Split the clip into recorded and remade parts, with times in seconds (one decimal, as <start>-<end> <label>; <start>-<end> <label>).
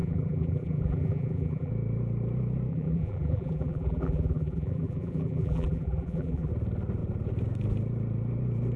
0.0-1.7 remade; 1.7-2.7 recorded; 2.7-6.5 remade; 6.5-8.8 recorded